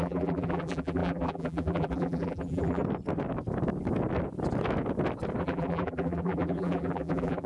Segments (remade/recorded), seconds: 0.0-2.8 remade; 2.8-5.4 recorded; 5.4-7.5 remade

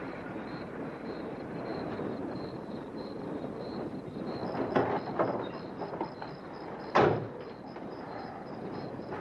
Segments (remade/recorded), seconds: 0.0-4.4 remade; 4.4-7.7 recorded; 7.7-9.2 remade

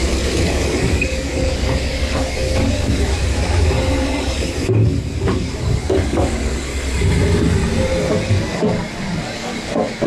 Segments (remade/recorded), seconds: 0.0-6.7 remade; 6.7-8.1 recorded; 8.1-10.1 remade

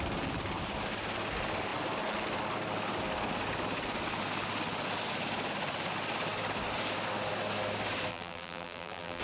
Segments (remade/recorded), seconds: 0.0-8.1 recorded; 8.1-9.2 remade

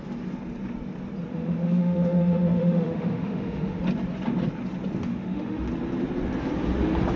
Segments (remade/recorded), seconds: 0.0-1.3 recorded; 1.3-3.8 remade; 3.8-5.1 recorded; 5.1-5.7 remade; 5.7-7.2 recorded